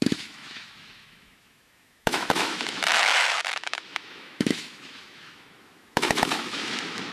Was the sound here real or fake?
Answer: fake